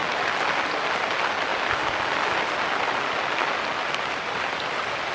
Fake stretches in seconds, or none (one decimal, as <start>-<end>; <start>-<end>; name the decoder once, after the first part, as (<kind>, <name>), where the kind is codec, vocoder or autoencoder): none